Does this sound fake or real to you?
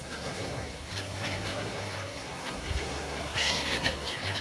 fake